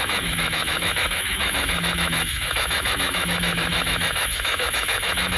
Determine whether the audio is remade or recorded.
remade